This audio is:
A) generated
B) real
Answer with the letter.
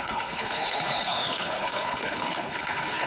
A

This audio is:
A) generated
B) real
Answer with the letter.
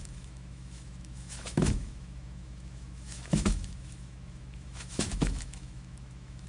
A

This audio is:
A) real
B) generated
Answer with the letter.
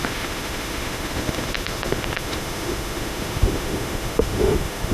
B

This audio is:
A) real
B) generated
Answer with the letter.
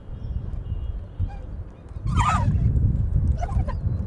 A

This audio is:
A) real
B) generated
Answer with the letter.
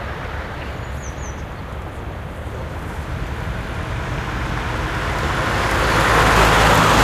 A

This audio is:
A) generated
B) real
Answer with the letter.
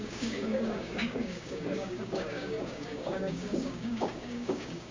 A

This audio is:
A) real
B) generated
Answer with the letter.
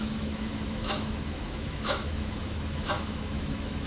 B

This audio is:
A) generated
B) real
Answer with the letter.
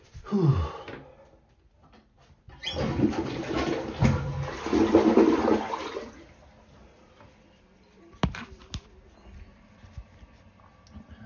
B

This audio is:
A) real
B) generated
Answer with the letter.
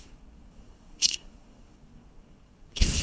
B